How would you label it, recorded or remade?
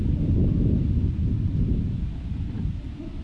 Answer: recorded